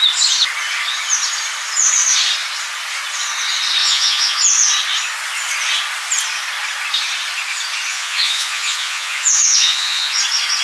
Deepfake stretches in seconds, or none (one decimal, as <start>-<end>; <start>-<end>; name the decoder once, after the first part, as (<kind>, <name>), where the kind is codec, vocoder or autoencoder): 3.8-4.4 (vocoder, Vocos); 7.9-10.2